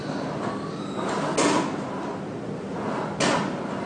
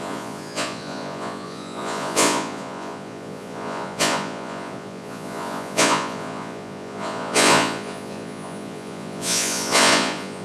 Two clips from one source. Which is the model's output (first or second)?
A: second